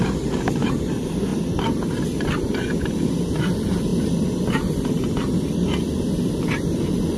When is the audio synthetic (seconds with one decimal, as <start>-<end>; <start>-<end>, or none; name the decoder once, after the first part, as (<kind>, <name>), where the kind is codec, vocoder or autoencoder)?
none